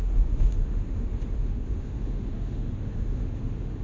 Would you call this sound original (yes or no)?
no